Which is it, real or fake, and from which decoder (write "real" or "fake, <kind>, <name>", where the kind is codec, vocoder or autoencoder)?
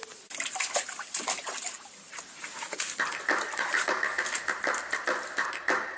real